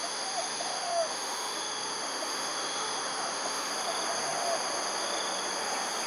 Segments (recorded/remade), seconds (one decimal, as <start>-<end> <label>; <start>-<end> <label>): 0.0-3.7 remade; 3.7-6.1 recorded

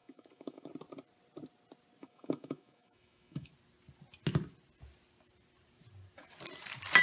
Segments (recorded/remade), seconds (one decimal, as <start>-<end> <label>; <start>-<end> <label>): 0.0-0.7 remade; 0.7-2.0 recorded; 2.0-3.5 remade; 3.5-7.0 recorded